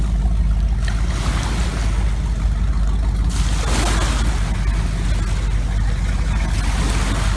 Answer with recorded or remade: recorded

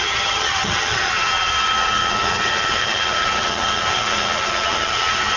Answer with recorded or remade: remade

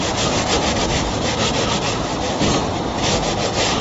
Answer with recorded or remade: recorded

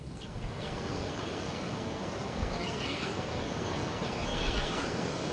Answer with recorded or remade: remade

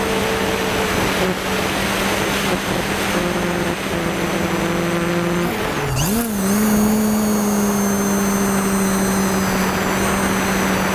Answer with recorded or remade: recorded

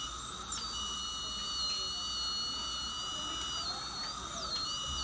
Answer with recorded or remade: recorded